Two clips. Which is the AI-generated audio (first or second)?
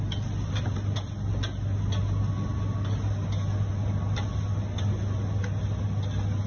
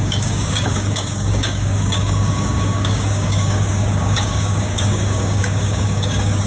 second